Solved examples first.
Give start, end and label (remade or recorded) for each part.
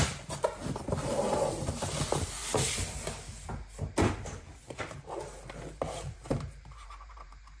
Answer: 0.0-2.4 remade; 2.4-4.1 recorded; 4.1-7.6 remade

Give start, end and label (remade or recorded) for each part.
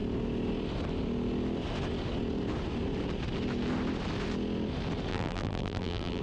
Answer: 0.0-5.1 recorded; 5.1-6.2 remade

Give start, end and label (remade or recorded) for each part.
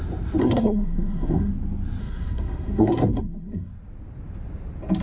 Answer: 0.0-0.4 recorded; 0.4-1.5 remade; 1.5-2.0 recorded; 2.0-3.7 remade; 3.7-5.0 recorded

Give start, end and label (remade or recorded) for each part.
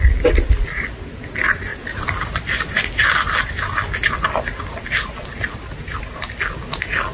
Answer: 0.0-7.1 recorded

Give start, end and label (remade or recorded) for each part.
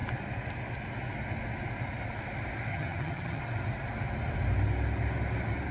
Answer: 0.0-2.7 recorded; 2.7-3.4 remade; 3.4-5.7 recorded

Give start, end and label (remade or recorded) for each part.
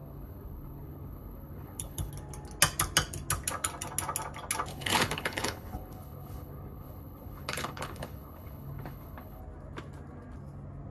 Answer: 0.0-2.1 remade; 2.1-4.7 recorded; 4.7-9.4 remade; 9.4-10.9 recorded